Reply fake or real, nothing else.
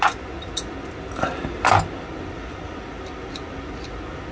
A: real